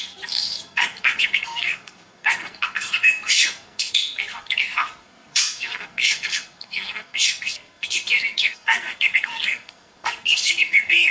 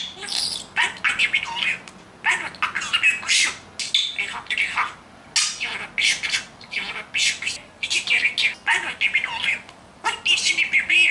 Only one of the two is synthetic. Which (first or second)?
first